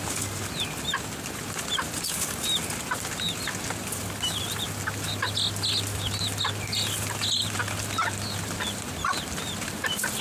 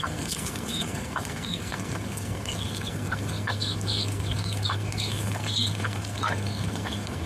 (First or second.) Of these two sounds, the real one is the first